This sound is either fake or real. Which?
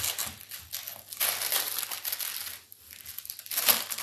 real